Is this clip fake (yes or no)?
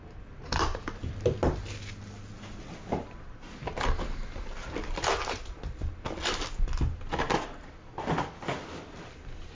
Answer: no